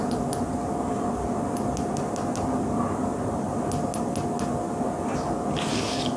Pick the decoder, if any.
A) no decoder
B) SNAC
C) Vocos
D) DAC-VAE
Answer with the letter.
A